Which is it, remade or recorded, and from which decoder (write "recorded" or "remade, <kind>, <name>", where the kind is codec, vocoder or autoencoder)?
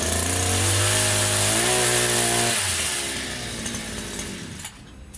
recorded